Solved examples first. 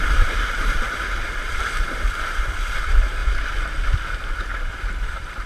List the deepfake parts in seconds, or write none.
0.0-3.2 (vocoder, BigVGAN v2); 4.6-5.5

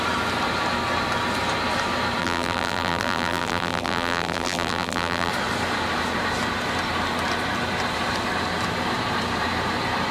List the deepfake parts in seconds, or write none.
2.2-5.3 (vocoder, BigVGAN v2)

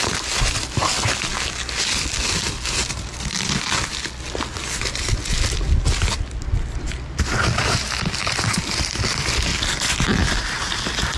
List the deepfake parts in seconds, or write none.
none

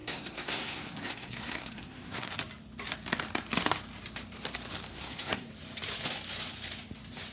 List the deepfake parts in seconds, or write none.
0.0-2.3 (codec, SNAC); 4.9-5.5

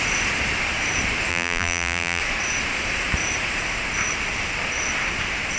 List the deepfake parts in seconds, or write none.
1.3-2.2 (vocoder, BigVGAN v2)

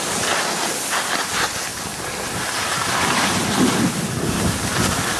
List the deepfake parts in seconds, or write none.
none

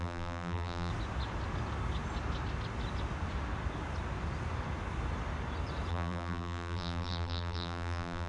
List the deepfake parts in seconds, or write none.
0.0-0.9 (vocoder, BigVGAN v2); 5.9-8.3

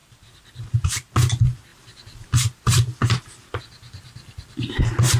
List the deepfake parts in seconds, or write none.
0.0-1.1 (vocoder, BigVGAN v2)